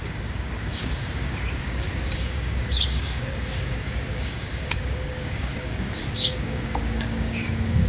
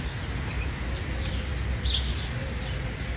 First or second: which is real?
second